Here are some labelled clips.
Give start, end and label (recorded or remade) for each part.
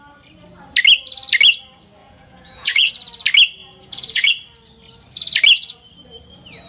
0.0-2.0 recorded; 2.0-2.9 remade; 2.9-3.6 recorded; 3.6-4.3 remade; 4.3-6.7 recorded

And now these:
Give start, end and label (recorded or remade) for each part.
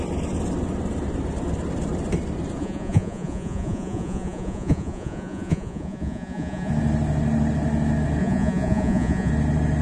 0.0-2.6 recorded; 2.6-6.7 remade; 6.7-8.2 recorded; 8.2-9.3 remade; 9.3-9.8 recorded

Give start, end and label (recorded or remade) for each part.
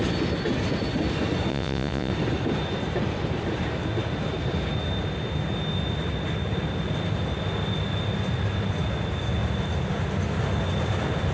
0.0-1.5 recorded; 1.5-2.1 remade; 2.1-11.3 recorded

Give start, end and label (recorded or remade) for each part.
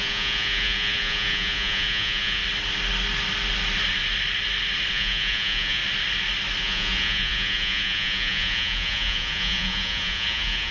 0.0-2.4 remade; 2.4-4.9 recorded; 4.9-5.8 remade; 5.8-6.6 recorded; 6.6-10.7 remade